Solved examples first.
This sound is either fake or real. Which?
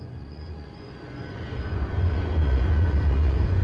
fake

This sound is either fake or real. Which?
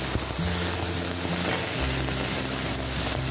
real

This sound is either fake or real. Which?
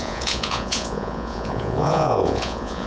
fake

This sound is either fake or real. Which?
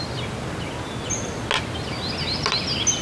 real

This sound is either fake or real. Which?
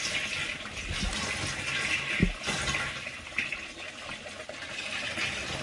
real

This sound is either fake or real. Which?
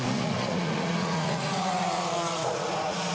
fake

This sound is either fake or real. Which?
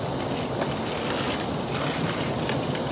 real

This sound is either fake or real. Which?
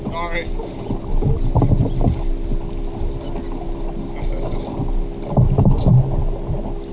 real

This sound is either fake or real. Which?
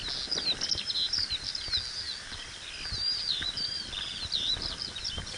real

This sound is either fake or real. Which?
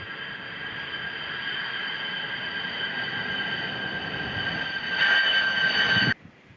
real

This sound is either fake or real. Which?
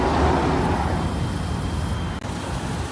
real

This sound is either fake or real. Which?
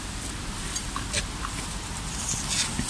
real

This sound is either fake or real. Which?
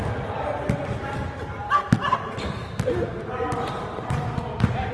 real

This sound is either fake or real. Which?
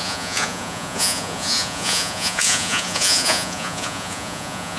fake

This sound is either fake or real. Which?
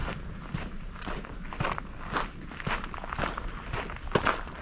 real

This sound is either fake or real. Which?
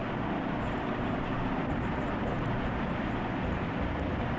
real